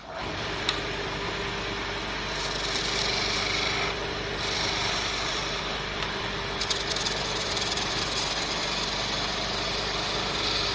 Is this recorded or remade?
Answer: remade